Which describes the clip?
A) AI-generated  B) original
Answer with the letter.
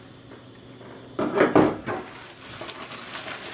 B